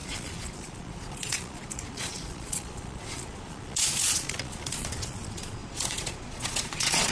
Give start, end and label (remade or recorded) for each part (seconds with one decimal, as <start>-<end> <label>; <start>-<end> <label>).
0.0-7.1 remade